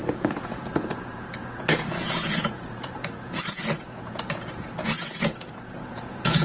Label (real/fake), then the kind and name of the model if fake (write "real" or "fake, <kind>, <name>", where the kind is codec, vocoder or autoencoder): fake, vocoder, Vocos